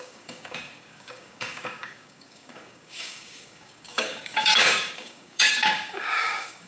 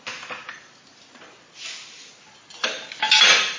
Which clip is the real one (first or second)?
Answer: second